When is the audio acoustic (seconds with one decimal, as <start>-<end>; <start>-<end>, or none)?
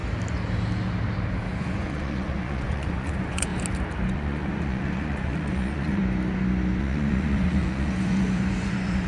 0.0-1.6; 3.5-4.1; 6.0-6.8